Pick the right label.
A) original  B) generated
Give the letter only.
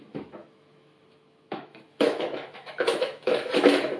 B